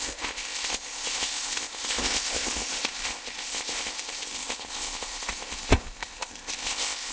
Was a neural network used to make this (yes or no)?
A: yes